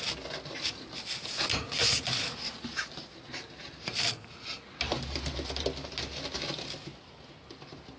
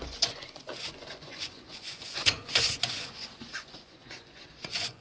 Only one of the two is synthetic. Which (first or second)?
second